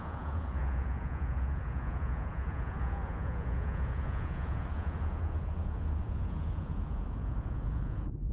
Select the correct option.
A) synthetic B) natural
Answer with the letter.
A